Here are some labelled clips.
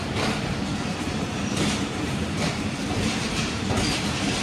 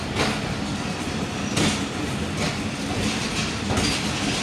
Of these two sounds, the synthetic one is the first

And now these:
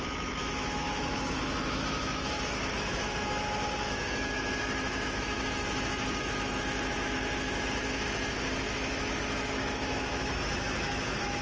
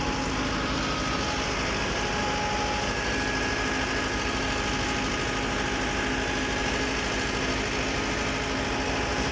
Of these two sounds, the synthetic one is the first